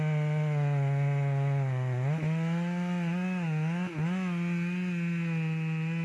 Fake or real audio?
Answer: real